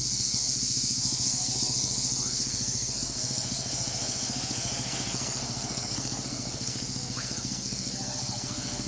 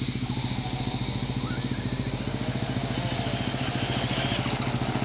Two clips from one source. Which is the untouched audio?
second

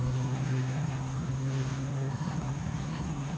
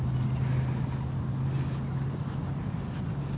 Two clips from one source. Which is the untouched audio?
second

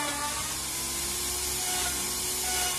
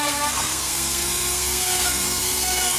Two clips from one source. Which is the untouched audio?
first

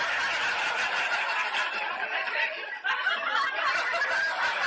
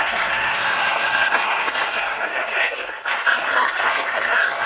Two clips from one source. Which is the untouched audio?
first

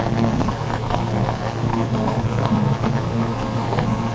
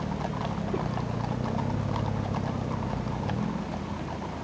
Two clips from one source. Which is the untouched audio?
second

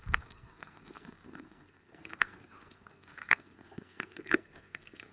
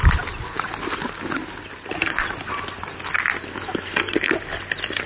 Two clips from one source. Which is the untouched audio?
second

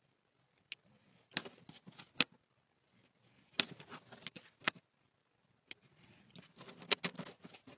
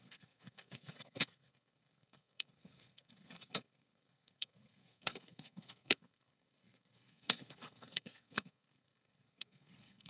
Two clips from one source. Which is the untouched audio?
first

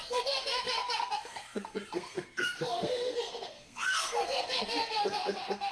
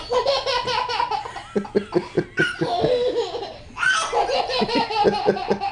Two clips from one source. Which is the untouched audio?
second